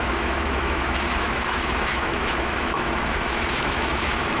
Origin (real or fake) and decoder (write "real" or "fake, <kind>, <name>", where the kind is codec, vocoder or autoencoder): fake, autoencoder, DAC-VAE